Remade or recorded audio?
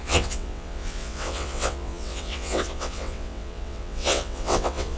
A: remade